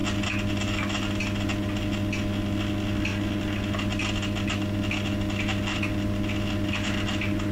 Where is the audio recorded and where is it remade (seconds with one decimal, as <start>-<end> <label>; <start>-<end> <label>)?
0.0-3.1 recorded; 3.1-5.9 remade; 5.9-7.5 recorded